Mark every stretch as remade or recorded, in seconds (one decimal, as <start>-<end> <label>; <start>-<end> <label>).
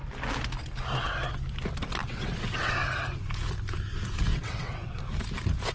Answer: 0.0-2.0 recorded; 2.0-2.7 remade; 2.7-4.3 recorded; 4.3-5.0 remade; 5.0-5.7 recorded